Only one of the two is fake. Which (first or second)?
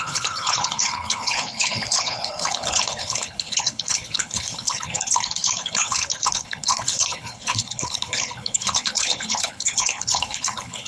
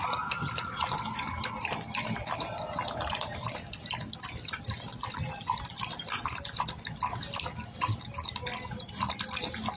first